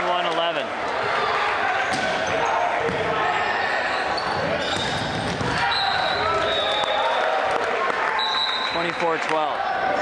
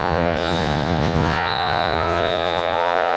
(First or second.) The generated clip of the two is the second